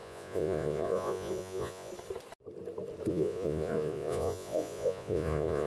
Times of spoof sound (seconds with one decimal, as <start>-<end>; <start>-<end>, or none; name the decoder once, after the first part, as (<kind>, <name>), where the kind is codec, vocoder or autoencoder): 0.0-1.9 (vocoder, Vocos); 3.1-5.7